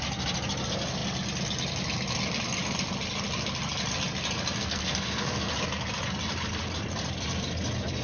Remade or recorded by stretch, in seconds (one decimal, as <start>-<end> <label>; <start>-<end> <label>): 0.0-4.6 recorded; 4.6-5.5 remade; 5.5-8.0 recorded